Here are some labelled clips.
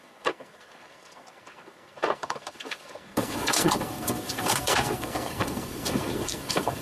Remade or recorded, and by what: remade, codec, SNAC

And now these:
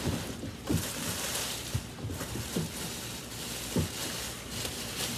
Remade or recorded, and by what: recorded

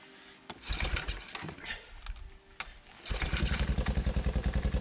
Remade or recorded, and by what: recorded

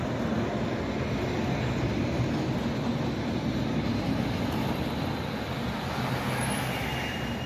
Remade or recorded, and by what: recorded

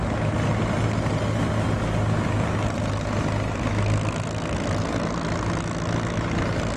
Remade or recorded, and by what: recorded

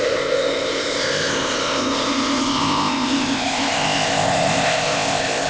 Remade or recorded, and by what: remade, codec, ZipCodec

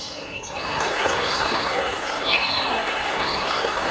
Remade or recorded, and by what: remade, codec, SNAC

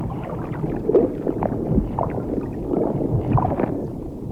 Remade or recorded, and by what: recorded